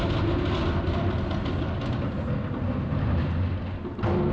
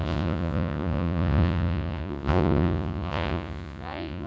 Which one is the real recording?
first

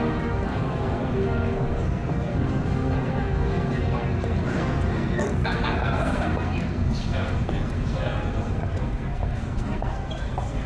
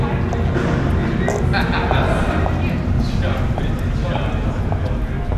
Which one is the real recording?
second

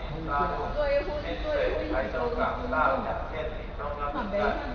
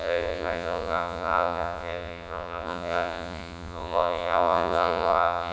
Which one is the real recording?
first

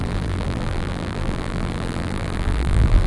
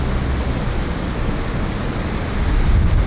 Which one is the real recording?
second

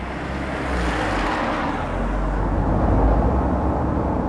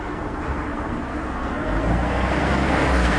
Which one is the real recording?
first